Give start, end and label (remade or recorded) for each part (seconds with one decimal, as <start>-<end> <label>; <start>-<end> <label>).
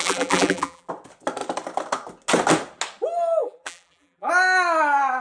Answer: 0.0-0.9 remade; 0.9-3.4 recorded; 3.4-4.3 remade; 4.3-5.2 recorded